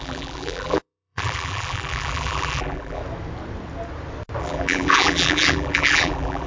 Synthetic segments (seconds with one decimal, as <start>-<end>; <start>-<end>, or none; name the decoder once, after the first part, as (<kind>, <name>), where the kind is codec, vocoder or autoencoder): 0.0-3.0 (vocoder, BigVGAN v2); 4.4-6.5